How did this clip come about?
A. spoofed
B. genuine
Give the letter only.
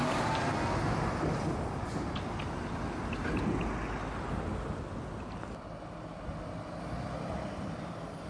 B